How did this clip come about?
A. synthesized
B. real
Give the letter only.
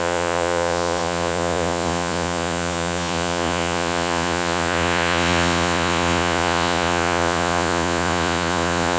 A